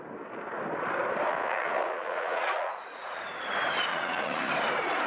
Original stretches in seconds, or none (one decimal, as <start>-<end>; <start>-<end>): 0.0-1.3; 3.2-3.9; 4.5-5.1